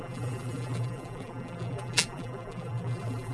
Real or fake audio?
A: fake